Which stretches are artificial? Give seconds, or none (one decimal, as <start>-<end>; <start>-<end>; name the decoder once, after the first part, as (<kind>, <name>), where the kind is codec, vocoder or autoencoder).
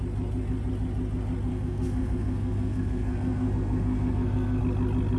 1.5-4.6 (codec, SNAC)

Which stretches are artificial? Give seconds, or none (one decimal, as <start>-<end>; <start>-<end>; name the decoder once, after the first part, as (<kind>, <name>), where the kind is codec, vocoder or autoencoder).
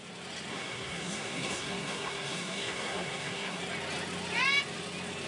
0.5-3.6 (codec, SNAC)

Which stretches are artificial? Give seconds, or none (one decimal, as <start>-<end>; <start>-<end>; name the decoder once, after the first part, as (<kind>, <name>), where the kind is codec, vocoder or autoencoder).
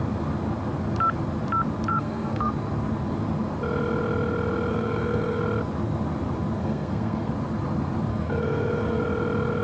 1.9-2.5 (codec, SNAC); 4.7-5.4; 6.6-7.3; 8.1-9.0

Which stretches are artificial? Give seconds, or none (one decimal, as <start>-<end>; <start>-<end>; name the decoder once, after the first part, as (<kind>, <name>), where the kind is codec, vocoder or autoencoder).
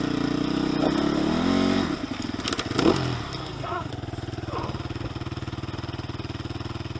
3.4-3.9 (codec, SNAC)